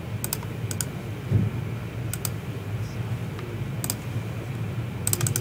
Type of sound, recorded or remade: recorded